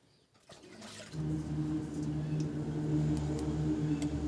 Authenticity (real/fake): real